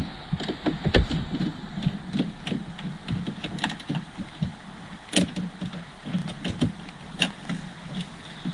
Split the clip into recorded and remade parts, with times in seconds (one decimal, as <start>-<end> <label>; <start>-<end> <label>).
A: 0.0-6.2 recorded; 6.2-7.2 remade; 7.2-8.5 recorded